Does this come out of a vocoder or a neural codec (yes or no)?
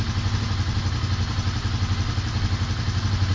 no